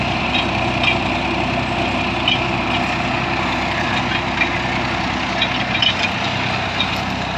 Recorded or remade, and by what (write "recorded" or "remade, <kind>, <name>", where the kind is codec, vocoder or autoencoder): recorded